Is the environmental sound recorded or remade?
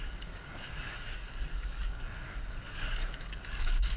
remade